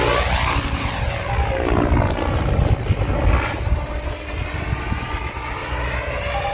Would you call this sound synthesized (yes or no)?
no